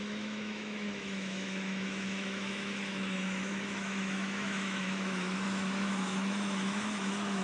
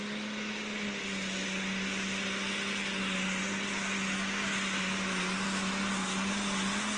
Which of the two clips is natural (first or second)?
second